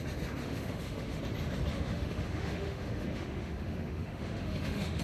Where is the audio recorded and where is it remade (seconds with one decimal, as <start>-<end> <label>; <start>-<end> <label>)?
0.0-0.4 recorded; 0.4-1.2 remade; 1.2-1.7 recorded; 1.7-5.0 remade

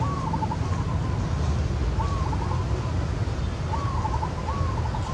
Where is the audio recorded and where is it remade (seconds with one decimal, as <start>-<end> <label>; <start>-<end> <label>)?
0.0-5.1 recorded

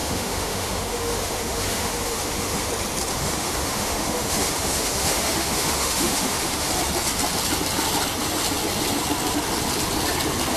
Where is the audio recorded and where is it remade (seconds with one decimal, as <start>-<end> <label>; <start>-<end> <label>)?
0.0-2.7 remade; 2.7-3.1 recorded; 3.1-6.7 remade; 6.7-10.6 recorded

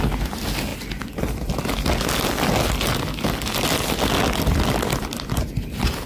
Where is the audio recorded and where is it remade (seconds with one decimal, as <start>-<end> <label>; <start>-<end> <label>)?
0.0-6.1 recorded

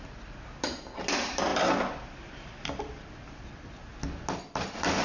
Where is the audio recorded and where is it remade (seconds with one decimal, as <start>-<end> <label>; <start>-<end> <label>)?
0.0-5.0 recorded

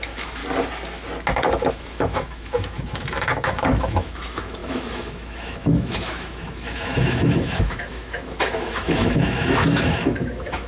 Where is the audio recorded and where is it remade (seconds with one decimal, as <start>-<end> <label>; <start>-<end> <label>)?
0.0-0.4 remade; 0.4-1.7 recorded; 1.7-10.7 remade

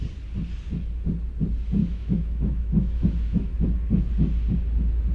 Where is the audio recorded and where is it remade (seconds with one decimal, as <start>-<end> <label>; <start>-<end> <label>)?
0.0-1.8 recorded; 1.8-3.5 remade; 3.5-5.1 recorded

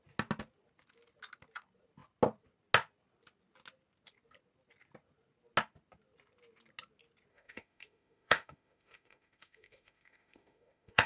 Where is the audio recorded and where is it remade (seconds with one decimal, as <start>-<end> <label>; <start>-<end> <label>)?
0.0-7.3 recorded; 7.3-11.1 remade